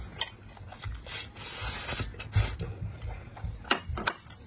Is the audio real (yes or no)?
yes